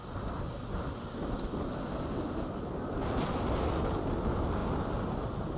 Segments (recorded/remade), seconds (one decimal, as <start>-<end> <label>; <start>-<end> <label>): 0.0-5.6 recorded